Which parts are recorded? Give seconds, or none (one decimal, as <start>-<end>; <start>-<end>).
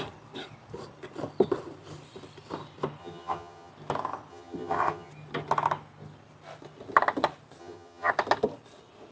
0.0-3.0; 3.7-4.3; 5.1-7.6; 8.1-9.1